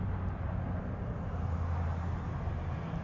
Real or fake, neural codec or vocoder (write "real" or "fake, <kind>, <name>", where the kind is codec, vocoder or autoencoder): real